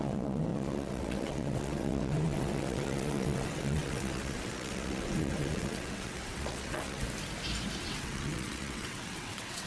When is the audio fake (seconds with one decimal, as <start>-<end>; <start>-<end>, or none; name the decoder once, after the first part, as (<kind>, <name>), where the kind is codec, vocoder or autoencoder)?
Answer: 0.0-7.0 (vocoder, WaveNeXt); 7.8-9.7